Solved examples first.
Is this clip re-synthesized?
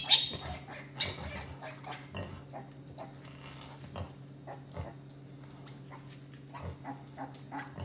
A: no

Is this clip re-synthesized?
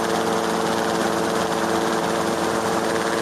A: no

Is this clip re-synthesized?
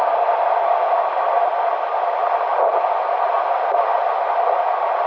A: no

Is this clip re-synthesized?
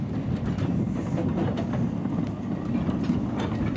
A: no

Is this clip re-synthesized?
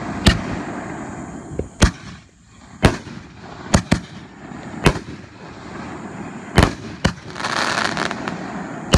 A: no